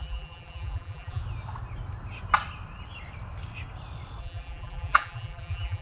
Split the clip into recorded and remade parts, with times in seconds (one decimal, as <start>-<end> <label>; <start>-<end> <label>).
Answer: 0.0-1.2 remade; 1.2-4.2 recorded; 4.2-5.8 remade